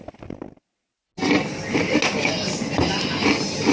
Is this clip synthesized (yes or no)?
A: no